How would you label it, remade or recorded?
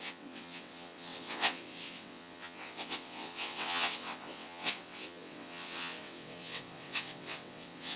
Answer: remade